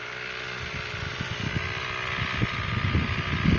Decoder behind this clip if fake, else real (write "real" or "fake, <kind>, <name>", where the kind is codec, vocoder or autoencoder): real